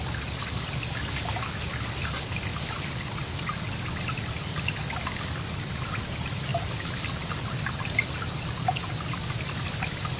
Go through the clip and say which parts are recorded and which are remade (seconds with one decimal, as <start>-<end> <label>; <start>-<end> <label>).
0.0-10.2 recorded